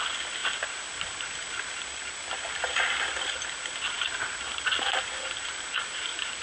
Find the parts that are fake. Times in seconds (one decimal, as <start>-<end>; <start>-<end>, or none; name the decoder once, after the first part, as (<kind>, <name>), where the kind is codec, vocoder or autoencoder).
none